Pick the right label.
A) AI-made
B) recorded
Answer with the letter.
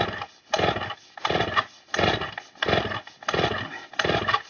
B